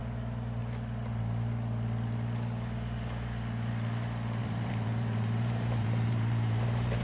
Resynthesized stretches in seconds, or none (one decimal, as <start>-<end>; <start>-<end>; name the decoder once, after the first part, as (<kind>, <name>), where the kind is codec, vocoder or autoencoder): 4.4-7.0 (vocoder, BigVGAN v2)

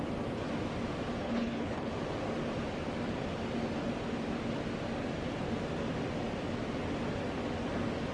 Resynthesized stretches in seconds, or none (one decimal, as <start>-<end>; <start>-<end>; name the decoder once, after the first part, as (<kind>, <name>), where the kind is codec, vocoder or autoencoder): 1.2-1.9 (codec, HILCodec)